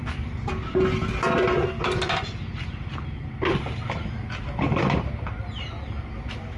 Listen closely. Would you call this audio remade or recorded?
recorded